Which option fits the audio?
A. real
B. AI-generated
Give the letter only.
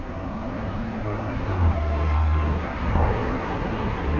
B